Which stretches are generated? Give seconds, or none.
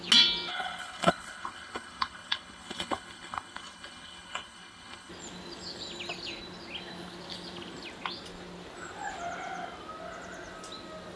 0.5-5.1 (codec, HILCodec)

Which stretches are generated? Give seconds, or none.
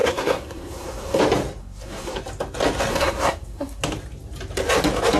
0.0-1.2 (codec, SNAC); 1.6-2.2; 2.9-3.8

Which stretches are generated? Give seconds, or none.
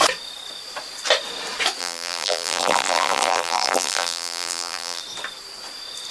1.8-5.0 (vocoder, BigVGAN v2)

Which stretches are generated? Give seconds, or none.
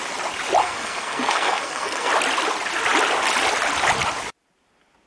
0.6-2.1 (codec, SNAC)